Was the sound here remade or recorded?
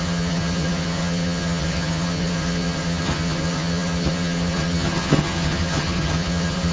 remade